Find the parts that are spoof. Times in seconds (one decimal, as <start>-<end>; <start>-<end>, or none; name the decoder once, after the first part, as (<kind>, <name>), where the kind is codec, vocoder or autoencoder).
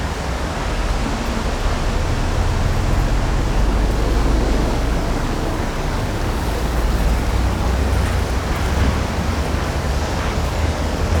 0.0-1.0 (codec, DAC); 3.4-7.8; 9.3-11.2